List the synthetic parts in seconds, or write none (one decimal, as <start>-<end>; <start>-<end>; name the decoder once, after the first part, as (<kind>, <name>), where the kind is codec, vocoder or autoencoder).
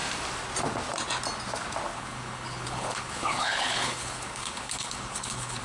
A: 1.9-5.6 (codec, HILCodec)